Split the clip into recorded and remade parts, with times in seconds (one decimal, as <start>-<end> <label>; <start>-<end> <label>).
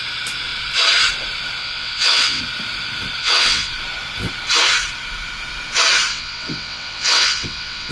0.0-1.6 recorded; 1.6-2.4 remade; 2.4-3.2 recorded; 3.2-3.7 remade; 3.7-6.1 recorded; 6.1-7.9 remade